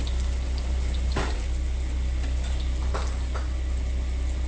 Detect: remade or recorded recorded